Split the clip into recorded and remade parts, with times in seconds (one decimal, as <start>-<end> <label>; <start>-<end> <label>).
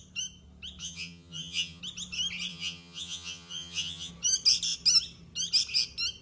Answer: 0.0-0.8 recorded; 0.8-1.8 remade; 1.8-2.5 recorded; 2.5-4.1 remade; 4.1-6.2 recorded